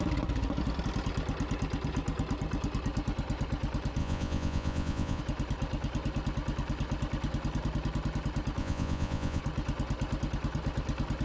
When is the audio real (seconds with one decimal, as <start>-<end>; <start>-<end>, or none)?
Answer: 0.0-4.0; 5.2-8.6; 9.4-11.2